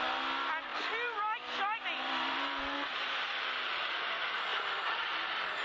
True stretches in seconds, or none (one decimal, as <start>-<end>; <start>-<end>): 0.0-0.7; 4.1-4.5